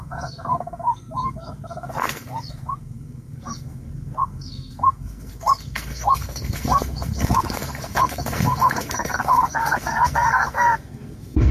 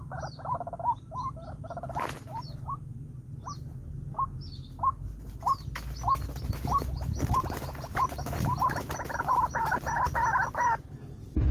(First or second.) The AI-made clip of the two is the first